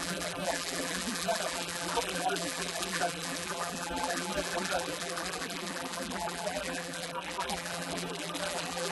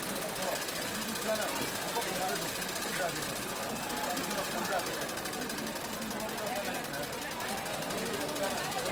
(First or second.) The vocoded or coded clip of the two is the first